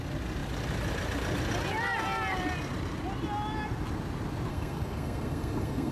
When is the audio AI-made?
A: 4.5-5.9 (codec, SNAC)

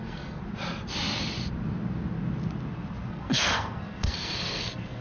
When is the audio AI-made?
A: 0.0-0.4 (codec, SNAC); 3.1-5.0

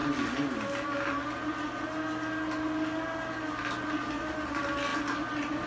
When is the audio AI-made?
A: none

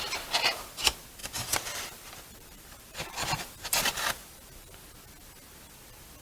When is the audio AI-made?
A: 1.2-4.9 (vocoder, BigVGAN v2)

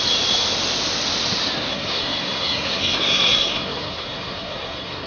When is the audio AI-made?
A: 1.7-5.1 (codec, SNAC)

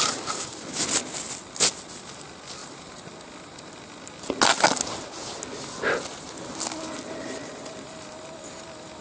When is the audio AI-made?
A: 0.0-1.0 (vocoder, BigVGAN v2); 1.7-2.6; 7.2-9.0

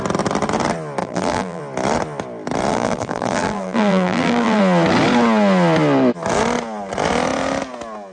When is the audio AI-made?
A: 1.0-1.6 (vocoder, BigVGAN v2); 2.7-4.6

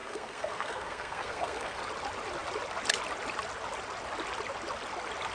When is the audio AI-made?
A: 0.0-1.8 (codec, SNAC)